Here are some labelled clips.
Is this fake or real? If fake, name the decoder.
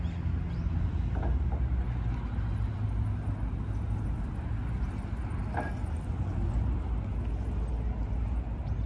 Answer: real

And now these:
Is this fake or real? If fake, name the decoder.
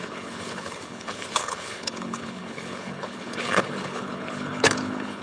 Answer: fake, codec, HILCodec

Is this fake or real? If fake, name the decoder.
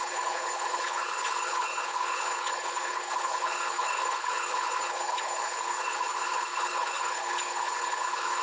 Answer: fake, codec, HILCodec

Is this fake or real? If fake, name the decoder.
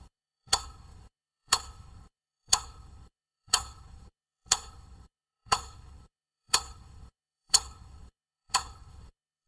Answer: fake, codec, HILCodec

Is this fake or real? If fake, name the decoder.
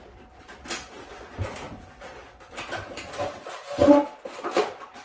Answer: real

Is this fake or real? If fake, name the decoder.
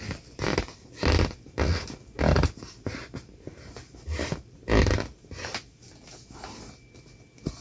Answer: real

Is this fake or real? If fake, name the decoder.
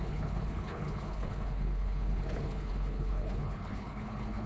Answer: fake, codec, HILCodec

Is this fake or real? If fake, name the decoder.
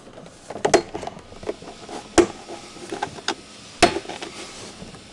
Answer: real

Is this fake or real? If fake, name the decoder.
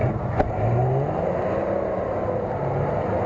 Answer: real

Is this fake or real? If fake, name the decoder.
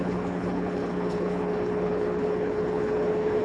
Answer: fake, codec, HILCodec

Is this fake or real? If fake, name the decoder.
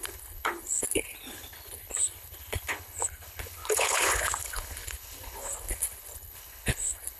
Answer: fake, codec, HILCodec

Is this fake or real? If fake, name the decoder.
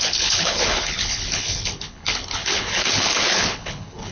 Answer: fake, codec, HILCodec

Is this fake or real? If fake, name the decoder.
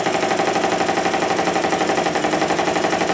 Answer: real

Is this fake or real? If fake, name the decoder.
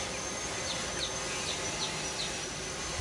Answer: real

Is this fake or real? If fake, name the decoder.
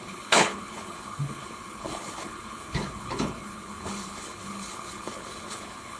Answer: fake, codec, HILCodec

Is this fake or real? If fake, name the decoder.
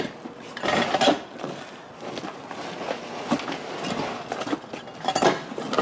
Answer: real